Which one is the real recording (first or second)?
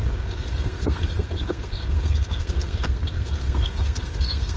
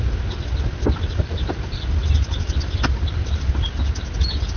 second